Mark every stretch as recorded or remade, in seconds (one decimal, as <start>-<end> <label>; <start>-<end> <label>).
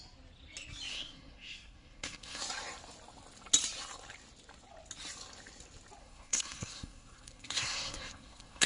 0.0-0.9 recorded; 0.9-2.4 remade; 2.4-6.0 recorded; 6.0-8.7 remade